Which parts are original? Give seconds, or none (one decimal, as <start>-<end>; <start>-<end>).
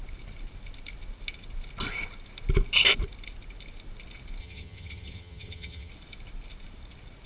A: 0.0-4.4; 5.9-7.3